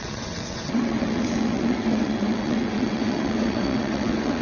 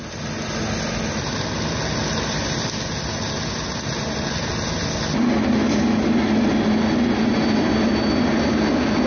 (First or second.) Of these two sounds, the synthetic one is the first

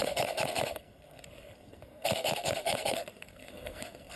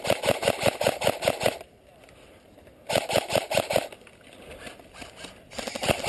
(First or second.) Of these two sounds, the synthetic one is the first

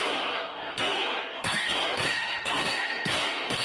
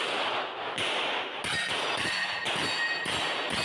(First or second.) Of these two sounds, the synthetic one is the first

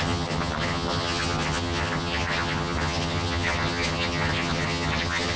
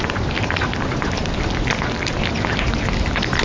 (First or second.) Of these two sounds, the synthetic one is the first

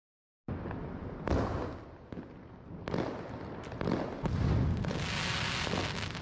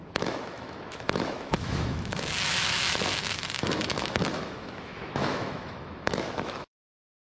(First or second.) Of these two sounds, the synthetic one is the second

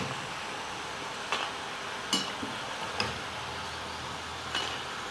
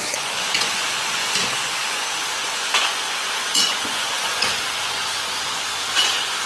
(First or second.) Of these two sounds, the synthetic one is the second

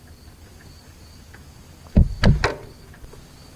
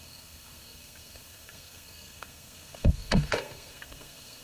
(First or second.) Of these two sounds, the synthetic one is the second